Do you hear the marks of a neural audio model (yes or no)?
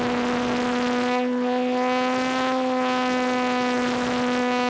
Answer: no